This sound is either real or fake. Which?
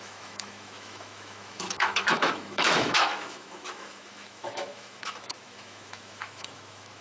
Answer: fake